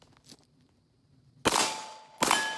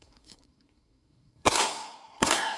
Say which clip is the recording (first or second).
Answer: first